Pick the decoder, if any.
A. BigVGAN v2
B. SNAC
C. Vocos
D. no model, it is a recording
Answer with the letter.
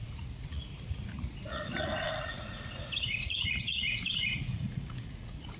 C